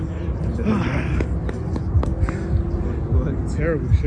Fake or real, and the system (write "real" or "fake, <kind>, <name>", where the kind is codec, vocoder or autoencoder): real